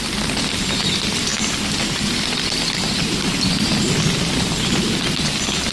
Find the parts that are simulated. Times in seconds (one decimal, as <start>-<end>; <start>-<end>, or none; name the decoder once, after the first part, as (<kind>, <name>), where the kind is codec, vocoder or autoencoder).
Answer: none